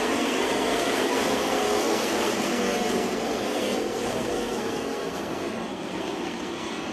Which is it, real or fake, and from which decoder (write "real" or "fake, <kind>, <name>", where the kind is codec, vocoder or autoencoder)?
fake, codec, SNAC